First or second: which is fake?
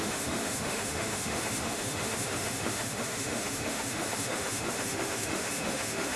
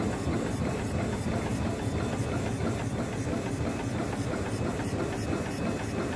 first